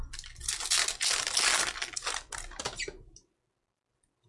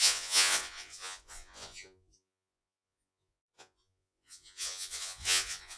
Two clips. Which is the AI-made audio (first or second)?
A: second